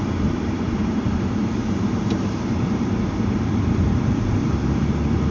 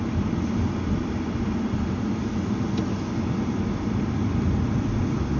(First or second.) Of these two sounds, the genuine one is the second